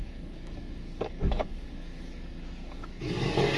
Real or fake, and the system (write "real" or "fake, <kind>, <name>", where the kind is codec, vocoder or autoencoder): fake, codec, DAC